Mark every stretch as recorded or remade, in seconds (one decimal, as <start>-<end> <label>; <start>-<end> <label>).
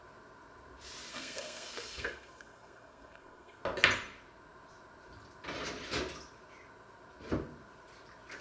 0.0-1.1 recorded; 1.1-3.6 remade; 3.6-8.4 recorded